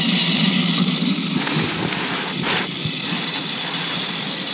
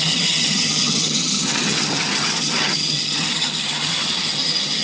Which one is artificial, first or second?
second